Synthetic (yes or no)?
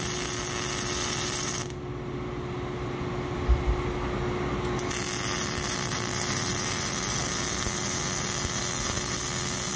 no